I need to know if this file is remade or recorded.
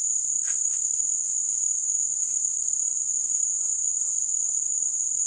remade